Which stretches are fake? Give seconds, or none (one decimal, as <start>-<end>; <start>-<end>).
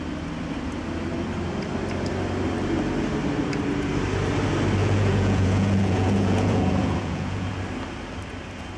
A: 4.8-7.5